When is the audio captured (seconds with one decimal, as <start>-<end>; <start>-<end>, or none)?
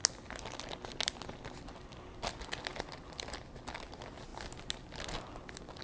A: 0.0-5.8